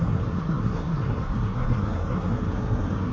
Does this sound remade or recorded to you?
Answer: remade